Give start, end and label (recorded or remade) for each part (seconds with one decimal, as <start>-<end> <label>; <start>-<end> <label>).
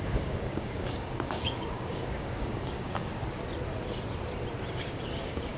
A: 0.0-3.1 remade; 3.1-4.7 recorded; 4.7-5.6 remade